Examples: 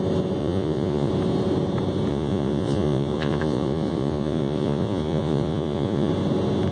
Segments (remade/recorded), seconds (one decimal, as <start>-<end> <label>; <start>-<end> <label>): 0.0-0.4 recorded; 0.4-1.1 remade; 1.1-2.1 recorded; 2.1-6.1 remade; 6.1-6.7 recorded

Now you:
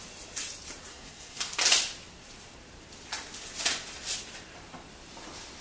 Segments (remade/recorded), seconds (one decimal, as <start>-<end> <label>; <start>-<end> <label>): 0.0-0.9 recorded; 0.9-1.5 remade; 1.5-5.6 recorded

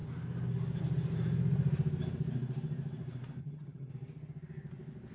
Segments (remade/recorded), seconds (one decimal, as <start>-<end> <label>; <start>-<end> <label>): 0.0-3.4 recorded; 3.4-3.9 remade; 3.9-5.1 recorded

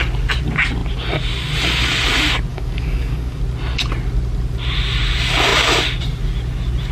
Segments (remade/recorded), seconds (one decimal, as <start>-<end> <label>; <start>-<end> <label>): 0.0-2.5 recorded; 2.5-3.4 remade; 3.4-6.9 recorded

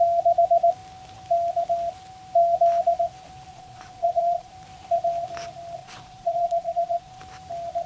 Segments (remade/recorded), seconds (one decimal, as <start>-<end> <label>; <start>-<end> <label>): 0.0-3.5 recorded; 3.5-4.5 remade; 4.5-5.8 recorded; 5.8-7.2 remade; 7.2-7.9 recorded

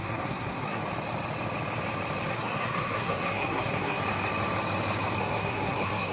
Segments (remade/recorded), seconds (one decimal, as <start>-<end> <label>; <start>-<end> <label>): 0.0-0.8 remade; 0.8-2.3 recorded; 2.3-4.0 remade; 4.0-5.2 recorded; 5.2-6.1 remade